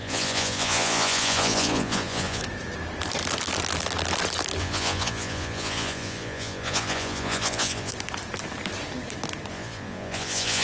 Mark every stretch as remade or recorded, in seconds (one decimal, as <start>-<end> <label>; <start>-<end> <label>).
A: 0.0-2.4 remade; 2.4-4.6 recorded; 4.6-7.9 remade; 7.9-9.5 recorded; 9.5-10.6 remade